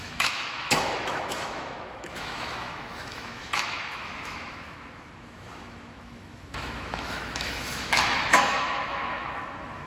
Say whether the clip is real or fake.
fake